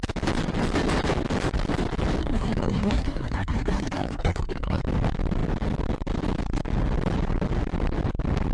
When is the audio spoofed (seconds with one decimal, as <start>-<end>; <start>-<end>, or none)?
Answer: 2.2-4.8